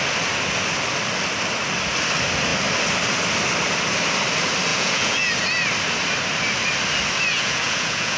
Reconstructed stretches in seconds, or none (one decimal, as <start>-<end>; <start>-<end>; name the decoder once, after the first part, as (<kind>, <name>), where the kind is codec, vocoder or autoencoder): 4.7-5.3 (vocoder, Vocos); 7.3-8.2